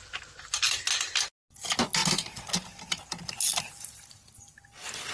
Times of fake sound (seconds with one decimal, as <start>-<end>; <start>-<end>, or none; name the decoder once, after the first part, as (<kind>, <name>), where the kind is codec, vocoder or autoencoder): none